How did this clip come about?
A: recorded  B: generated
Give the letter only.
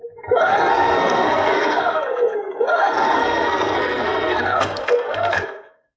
B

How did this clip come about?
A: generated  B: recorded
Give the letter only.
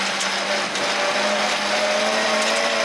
B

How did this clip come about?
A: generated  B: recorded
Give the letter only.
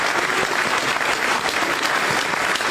B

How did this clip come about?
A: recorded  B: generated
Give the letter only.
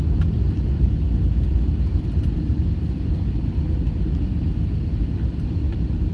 A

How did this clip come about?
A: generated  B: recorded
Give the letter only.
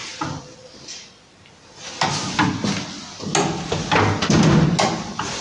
B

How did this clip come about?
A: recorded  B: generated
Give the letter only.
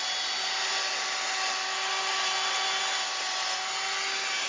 A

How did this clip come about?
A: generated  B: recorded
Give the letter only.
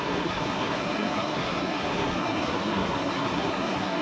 A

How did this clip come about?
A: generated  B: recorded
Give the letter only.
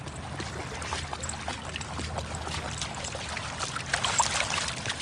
B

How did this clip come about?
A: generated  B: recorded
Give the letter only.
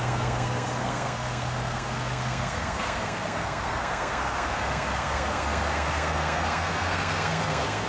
A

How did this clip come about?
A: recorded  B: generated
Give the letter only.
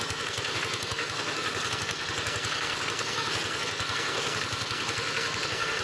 B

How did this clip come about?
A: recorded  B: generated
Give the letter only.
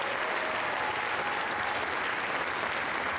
A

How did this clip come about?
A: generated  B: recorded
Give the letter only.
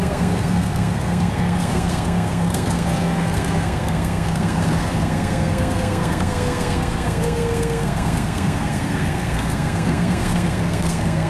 A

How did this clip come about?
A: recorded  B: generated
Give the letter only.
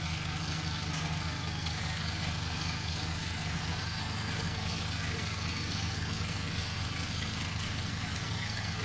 B